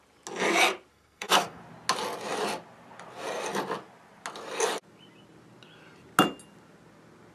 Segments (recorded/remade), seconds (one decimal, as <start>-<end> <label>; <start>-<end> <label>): 0.0-0.9 recorded; 0.9-1.6 remade; 1.6-7.3 recorded